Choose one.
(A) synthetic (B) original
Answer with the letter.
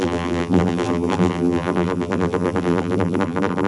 A